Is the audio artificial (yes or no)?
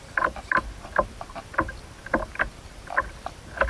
no